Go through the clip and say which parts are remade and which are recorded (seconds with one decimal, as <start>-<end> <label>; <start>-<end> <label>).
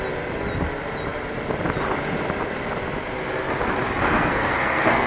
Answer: 0.0-4.0 recorded; 4.0-5.1 remade